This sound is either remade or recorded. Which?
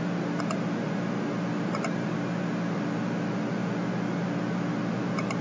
recorded